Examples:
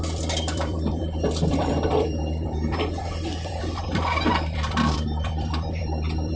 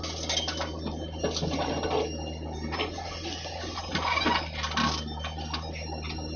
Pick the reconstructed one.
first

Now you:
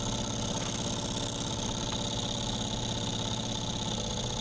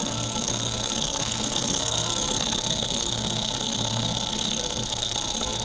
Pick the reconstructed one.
second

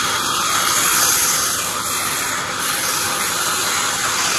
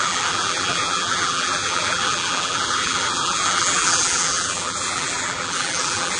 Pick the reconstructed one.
second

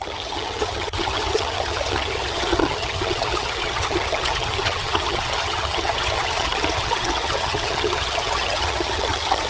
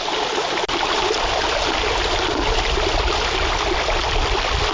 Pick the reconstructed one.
first